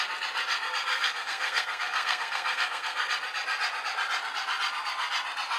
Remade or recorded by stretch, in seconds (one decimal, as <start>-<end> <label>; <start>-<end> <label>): 0.0-0.9 recorded; 0.9-3.1 remade; 3.1-5.6 recorded